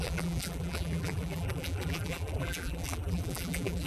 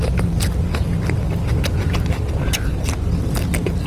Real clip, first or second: second